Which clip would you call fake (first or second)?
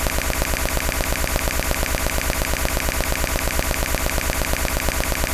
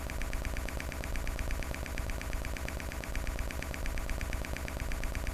second